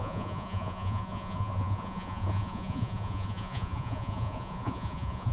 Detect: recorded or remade remade